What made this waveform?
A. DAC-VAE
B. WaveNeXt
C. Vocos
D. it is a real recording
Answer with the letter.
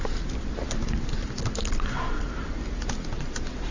D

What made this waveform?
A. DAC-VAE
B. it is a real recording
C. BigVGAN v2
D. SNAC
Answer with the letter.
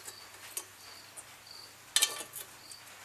B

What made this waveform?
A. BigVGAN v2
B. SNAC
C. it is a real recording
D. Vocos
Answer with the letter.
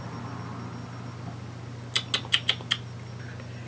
C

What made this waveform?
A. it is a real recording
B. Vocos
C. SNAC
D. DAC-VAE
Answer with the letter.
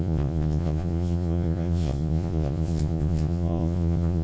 B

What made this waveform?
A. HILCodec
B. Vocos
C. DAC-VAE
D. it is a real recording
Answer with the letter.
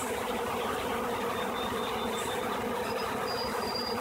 D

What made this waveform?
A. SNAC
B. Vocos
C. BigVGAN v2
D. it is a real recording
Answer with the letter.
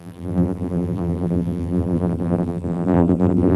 C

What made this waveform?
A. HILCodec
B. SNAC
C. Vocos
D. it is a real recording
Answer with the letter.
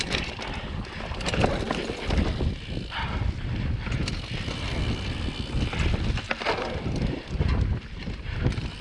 D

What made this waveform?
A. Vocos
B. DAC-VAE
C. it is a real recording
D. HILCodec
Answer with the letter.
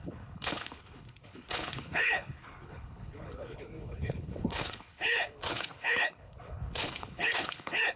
D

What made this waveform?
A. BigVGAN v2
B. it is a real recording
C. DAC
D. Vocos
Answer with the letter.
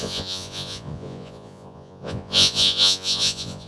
D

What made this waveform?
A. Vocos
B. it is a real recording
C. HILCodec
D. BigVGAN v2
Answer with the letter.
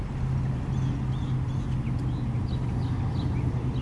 B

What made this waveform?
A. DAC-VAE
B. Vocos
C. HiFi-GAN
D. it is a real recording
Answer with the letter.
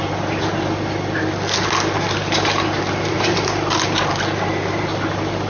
D